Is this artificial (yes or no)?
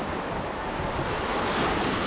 no